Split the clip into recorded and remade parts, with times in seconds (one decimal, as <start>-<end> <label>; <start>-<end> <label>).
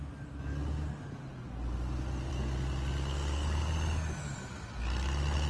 0.0-5.5 recorded